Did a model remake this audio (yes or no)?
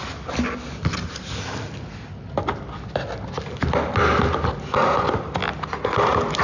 no